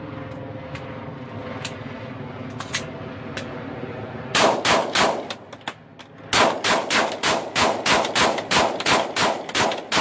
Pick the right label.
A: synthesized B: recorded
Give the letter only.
B